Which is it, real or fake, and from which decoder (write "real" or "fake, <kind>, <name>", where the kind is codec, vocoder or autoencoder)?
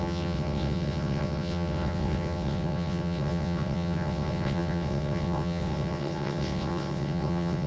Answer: fake, vocoder, WaveNeXt